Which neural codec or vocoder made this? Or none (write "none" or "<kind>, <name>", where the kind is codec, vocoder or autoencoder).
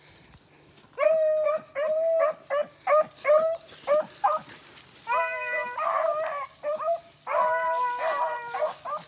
none